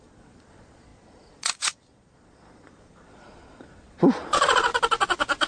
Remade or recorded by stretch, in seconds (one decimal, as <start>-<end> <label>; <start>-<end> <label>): 0.0-4.7 remade; 4.7-5.5 recorded